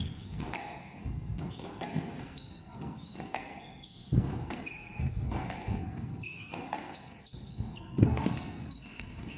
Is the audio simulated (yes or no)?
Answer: yes